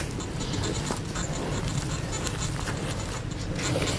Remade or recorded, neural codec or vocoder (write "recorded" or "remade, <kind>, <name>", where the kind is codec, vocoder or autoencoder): recorded